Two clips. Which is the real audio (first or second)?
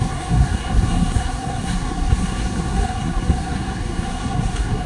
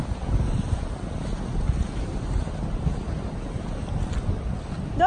second